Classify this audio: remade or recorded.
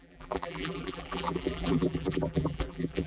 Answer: remade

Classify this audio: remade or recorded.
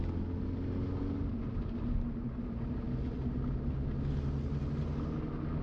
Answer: recorded